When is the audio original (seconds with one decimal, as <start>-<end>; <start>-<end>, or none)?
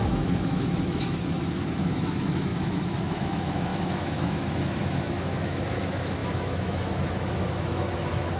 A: none